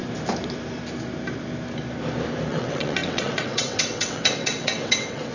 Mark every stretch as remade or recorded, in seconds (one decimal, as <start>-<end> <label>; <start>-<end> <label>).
0.0-2.5 recorded; 2.5-5.3 remade